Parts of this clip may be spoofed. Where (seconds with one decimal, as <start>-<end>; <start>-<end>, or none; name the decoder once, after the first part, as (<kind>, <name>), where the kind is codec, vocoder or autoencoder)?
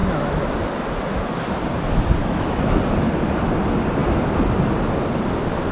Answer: 0.0-0.5 (autoencoder, DAC-VAE); 2.2-2.8